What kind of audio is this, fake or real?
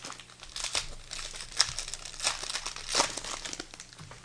real